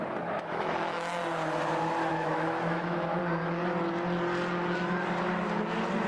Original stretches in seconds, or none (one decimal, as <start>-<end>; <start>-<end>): 1.2-2.1; 3.2-6.1